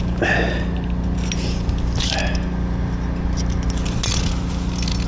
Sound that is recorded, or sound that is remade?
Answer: recorded